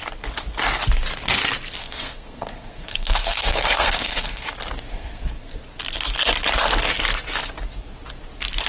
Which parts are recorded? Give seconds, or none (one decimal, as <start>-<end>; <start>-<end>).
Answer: 0.0-1.8; 4.5-4.9; 5.6-8.7